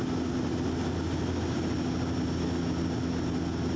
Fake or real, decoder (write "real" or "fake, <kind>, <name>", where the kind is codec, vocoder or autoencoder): real